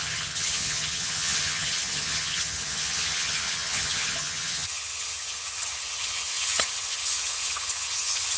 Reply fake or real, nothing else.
fake